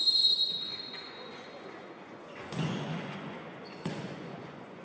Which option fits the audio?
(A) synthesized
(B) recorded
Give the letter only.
A